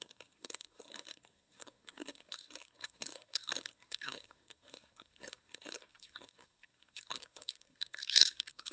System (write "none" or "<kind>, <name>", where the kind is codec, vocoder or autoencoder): codec, SNAC